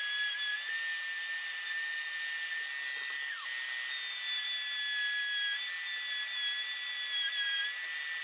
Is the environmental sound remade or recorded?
recorded